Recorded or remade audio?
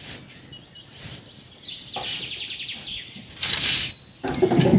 recorded